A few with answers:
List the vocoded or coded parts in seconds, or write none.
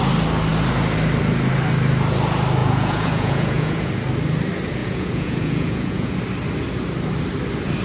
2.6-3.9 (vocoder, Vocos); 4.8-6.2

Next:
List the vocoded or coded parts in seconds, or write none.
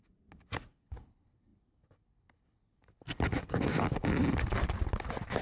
none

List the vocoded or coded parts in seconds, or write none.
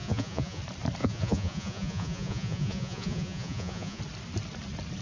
0.0-0.6 (vocoder, Vocos); 1.0-4.0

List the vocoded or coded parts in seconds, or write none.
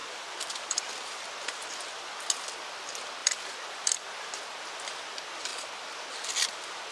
0.0-2.1 (vocoder, BigVGAN v2); 3.2-4.3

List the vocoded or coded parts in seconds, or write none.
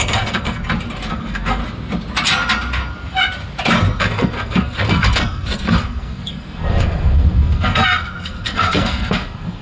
0.0-0.6 (codec, SNAC); 1.1-1.6; 4.0-9.6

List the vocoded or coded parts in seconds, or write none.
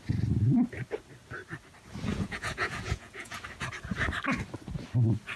2.1-3.4 (vocoder, Vocos)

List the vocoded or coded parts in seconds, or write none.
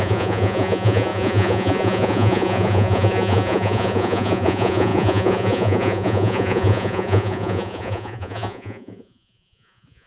0.0-10.1 (vocoder, Vocos)